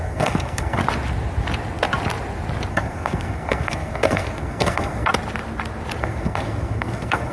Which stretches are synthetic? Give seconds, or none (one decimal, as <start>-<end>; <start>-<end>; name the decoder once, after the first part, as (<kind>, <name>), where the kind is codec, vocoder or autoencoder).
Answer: 0.0-0.8 (codec, SNAC); 2.7-5.1; 6.0-7.3